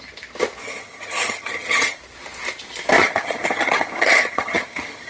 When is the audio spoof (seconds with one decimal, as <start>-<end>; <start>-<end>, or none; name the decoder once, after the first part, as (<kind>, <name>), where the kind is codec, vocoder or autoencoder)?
0.6-2.0 (vocoder, HiFi-GAN); 3.0-5.1